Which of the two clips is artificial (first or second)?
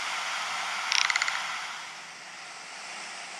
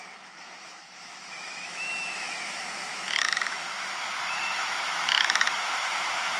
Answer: second